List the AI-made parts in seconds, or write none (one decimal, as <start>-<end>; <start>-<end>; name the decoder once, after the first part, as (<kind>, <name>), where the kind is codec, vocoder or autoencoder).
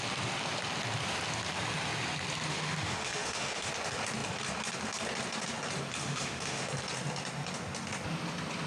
2.5-3.7 (autoencoder, DAC-VAE); 6.0-6.7